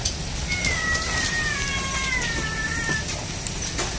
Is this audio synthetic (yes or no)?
no